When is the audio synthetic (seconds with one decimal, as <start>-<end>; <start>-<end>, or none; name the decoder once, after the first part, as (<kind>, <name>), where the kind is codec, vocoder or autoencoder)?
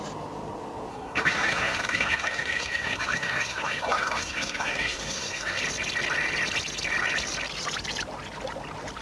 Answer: 0.9-5.6 (codec, SNAC)